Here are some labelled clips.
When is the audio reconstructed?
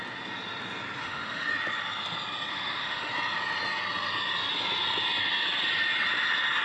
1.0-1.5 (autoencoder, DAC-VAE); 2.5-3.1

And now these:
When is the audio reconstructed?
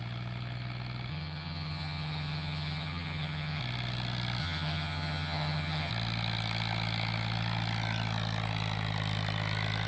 1.1-3.6 (vocoder, HiFi-GAN); 4.4-5.9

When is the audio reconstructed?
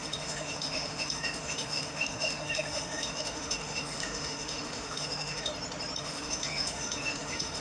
0.0-5.5 (autoencoder, DAC-VAE); 6.0-7.6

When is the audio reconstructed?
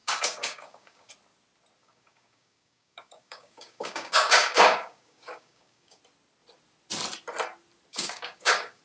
0.0-1.1 (codec, DAC); 1.8-6.0; 7.9-8.8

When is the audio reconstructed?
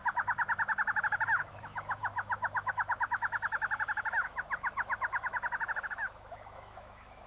0.0-7.3 (autoencoder, DAC-VAE)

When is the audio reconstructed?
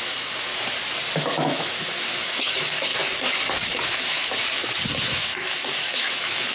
0.0-0.5 (autoencoder, DAC-VAE); 1.2-2.9; 3.7-4.2; 5.0-6.5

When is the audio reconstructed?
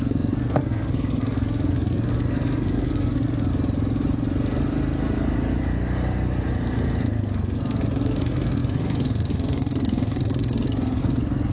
0.0-3.5 (codec, SNAC); 7.1-11.5